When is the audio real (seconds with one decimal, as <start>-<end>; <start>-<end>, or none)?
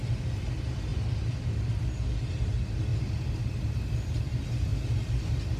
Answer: 0.0-5.6